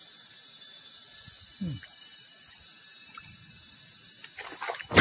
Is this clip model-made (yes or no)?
no